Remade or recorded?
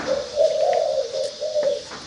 recorded